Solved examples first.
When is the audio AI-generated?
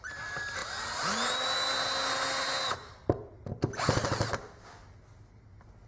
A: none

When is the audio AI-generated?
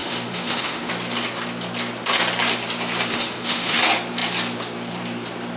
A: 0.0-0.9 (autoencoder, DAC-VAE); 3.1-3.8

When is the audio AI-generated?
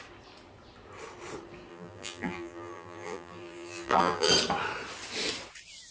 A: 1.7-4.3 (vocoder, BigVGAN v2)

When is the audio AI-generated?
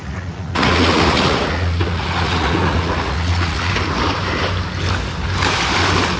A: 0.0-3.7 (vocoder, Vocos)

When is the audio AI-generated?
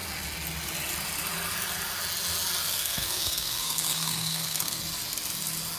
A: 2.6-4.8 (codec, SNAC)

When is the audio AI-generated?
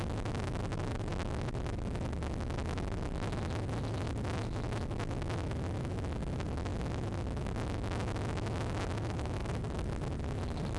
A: 9.4-9.9 (vocoder, BigVGAN v2)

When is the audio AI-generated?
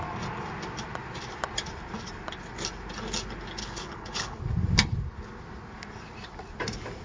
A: 3.6-4.4 (codec, HILCodec)